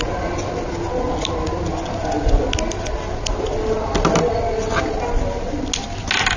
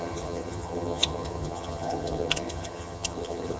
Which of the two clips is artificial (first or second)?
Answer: second